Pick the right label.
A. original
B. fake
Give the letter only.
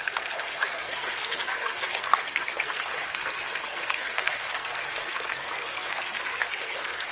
B